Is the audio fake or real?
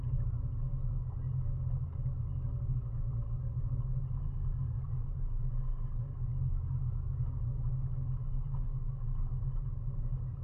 real